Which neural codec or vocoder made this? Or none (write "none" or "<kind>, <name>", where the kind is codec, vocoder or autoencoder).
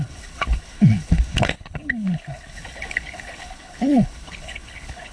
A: codec, HILCodec